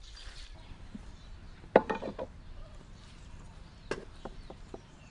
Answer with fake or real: fake